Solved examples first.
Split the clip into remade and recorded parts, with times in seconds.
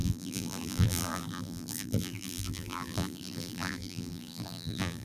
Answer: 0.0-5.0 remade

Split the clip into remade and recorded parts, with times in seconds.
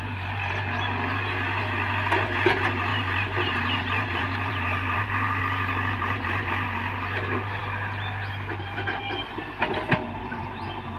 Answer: 0.0-2.9 recorded; 2.9-5.4 remade; 5.4-10.2 recorded; 10.2-11.0 remade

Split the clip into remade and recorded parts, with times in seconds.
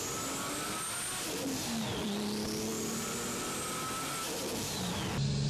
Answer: 0.0-5.5 recorded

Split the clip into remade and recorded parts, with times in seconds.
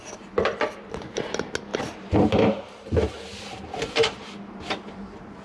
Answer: 0.0-1.7 recorded; 1.7-4.3 remade; 4.3-5.4 recorded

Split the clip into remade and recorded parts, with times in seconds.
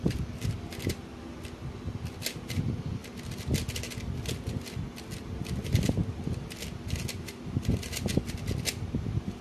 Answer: 0.0-9.4 recorded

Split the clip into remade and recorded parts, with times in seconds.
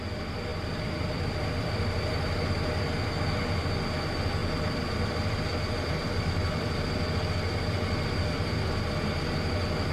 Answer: 0.0-0.5 recorded; 0.5-2.4 remade; 2.4-9.9 recorded